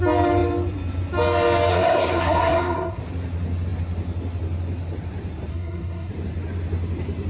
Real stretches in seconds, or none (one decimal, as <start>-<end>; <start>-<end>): 0.0-1.7; 3.0-5.5; 6.1-7.3